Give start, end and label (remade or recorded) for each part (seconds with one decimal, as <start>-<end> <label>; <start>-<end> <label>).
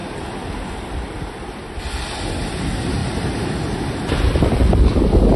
0.0-3.0 recorded; 3.0-4.7 remade; 4.7-5.4 recorded